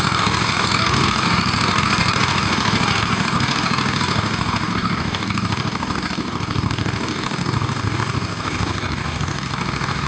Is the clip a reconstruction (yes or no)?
yes